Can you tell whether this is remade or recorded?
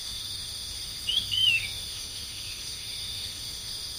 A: remade